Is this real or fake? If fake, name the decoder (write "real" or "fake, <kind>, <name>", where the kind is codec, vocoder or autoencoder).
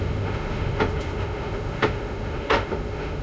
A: fake, autoencoder, DAC-VAE